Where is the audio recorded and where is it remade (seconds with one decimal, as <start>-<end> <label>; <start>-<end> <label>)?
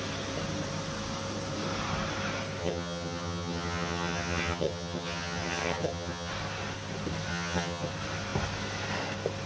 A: 0.0-2.6 recorded; 2.6-6.3 remade; 6.3-7.3 recorded; 7.3-7.9 remade; 7.9-9.5 recorded